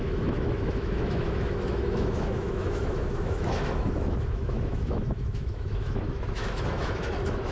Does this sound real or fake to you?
fake